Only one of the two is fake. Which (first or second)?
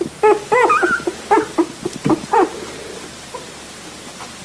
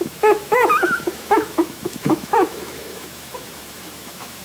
second